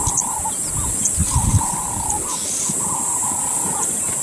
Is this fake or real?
real